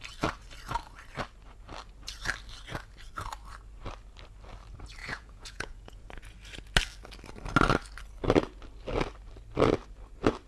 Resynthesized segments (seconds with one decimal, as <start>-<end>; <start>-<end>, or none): 5.0-6.0